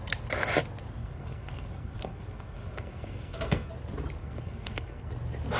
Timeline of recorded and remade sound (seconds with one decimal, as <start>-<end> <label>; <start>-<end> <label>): 0.0-1.0 recorded; 1.0-3.7 remade; 3.7-4.2 recorded; 4.2-5.1 remade; 5.1-5.6 recorded